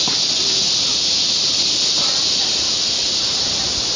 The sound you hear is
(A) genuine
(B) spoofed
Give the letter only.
A